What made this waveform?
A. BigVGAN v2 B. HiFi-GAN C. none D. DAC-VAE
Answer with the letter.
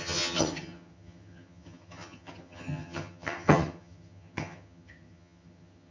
B